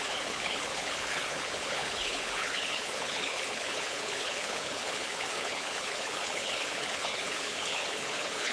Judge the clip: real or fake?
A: fake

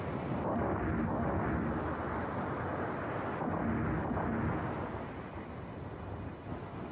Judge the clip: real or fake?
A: real